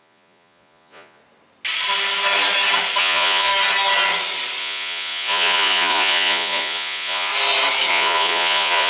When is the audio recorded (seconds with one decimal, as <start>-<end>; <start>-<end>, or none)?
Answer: 1.2-3.0; 3.5-4.6; 7.3-7.9